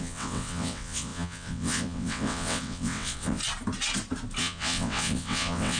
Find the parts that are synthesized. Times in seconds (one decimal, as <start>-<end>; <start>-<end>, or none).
0.0-3.4; 4.4-5.8

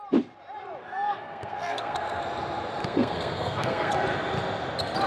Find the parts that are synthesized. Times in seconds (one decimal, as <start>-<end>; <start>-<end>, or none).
0.8-2.2; 2.8-3.9

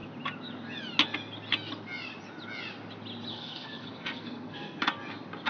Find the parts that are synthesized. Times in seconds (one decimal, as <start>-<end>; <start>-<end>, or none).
3.3-4.8